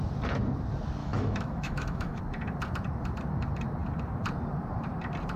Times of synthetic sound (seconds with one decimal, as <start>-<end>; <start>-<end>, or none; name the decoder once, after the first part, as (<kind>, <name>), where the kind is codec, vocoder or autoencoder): 1.0-2.2 (autoencoder, DAC-VAE)